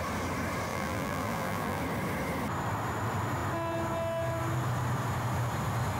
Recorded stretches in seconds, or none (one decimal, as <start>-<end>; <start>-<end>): 0.0-0.7; 1.8-6.0